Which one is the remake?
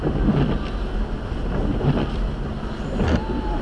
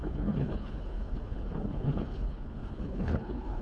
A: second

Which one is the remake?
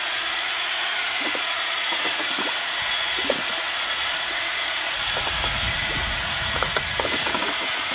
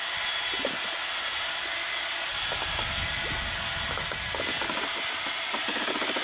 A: first